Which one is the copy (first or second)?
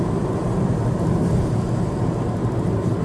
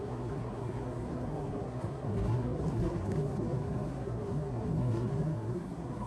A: second